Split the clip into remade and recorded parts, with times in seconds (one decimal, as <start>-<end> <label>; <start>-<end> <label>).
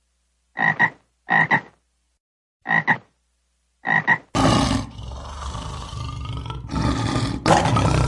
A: 0.0-8.1 recorded